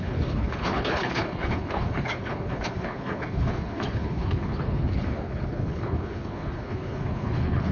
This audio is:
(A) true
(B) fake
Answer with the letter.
B